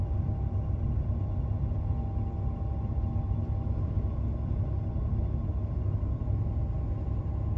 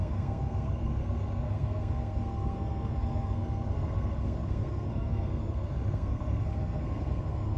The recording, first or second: first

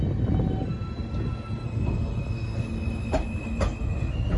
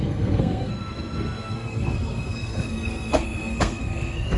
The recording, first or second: first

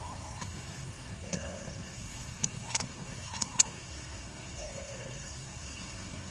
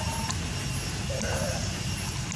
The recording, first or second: second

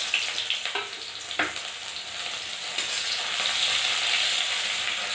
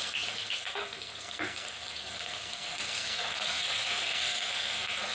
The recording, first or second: first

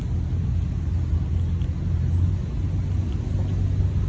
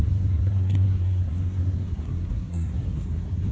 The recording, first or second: first